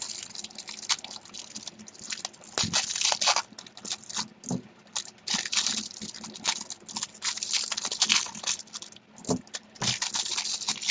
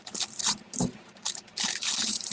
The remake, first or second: second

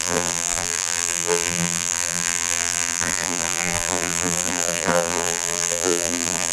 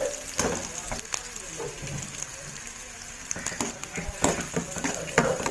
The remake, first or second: first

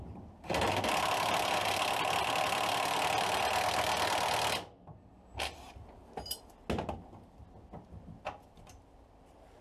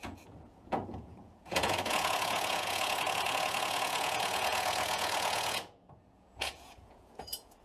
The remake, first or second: second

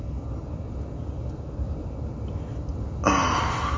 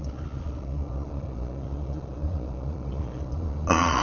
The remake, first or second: second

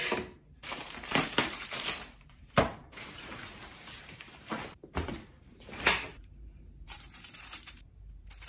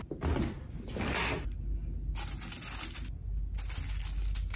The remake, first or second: first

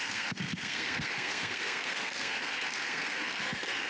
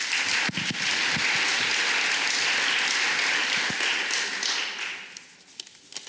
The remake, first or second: first